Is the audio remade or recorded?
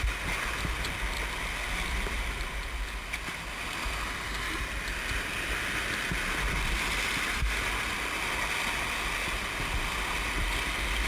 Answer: recorded